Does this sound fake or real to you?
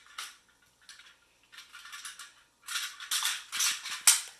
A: real